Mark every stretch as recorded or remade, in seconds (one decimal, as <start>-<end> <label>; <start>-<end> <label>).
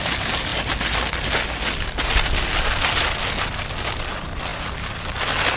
0.0-5.6 recorded